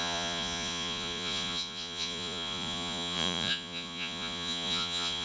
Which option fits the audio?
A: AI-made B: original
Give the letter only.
A